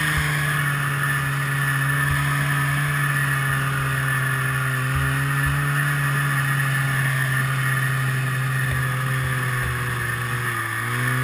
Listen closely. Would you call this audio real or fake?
real